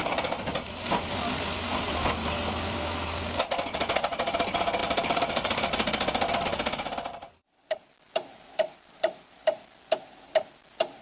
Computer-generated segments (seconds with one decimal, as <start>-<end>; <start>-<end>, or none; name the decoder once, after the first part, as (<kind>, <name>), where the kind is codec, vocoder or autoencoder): 4.8-5.7 (vocoder, BigVGAN v2); 7.1-11.0